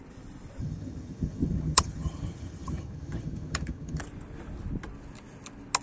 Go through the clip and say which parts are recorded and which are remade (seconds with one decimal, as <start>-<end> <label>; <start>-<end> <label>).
0.0-0.6 recorded; 0.6-4.0 remade; 4.0-5.8 recorded